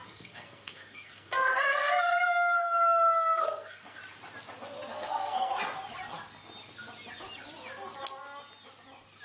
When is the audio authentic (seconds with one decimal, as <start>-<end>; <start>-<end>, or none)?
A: 4.0-4.9; 5.5-9.2